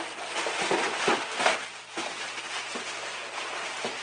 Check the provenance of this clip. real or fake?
real